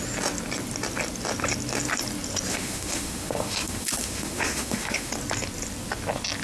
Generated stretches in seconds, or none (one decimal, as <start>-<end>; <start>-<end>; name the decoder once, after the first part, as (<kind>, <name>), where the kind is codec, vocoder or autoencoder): 2.5-5.1 (autoencoder, DAC-VAE)